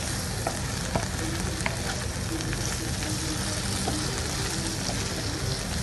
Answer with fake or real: real